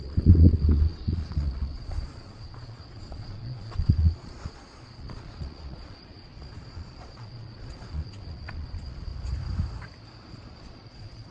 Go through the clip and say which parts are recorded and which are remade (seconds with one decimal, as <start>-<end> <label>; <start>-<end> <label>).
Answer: 0.0-9.1 remade; 9.1-10.3 recorded; 10.3-11.3 remade

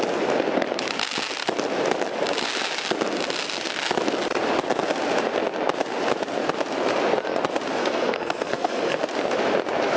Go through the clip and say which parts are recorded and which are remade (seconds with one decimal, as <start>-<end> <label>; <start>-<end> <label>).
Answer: 0.0-7.8 recorded; 7.8-9.0 remade; 9.0-10.0 recorded

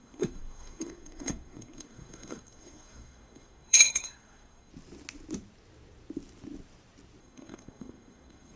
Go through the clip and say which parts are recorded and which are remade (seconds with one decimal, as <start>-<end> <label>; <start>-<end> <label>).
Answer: 0.0-4.7 remade; 4.7-7.2 recorded; 7.2-8.6 remade

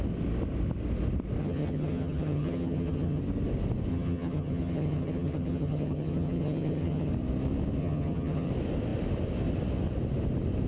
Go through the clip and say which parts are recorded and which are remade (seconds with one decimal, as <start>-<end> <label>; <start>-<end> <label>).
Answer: 0.0-1.4 recorded; 1.4-3.2 remade; 3.2-3.9 recorded; 3.9-7.1 remade; 7.1-7.8 recorded; 7.8-8.5 remade; 8.5-10.7 recorded

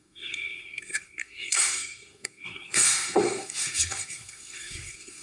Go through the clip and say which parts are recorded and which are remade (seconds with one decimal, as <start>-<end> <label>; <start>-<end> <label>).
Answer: 0.0-5.2 remade